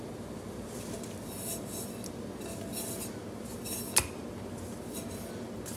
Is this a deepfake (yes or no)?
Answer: no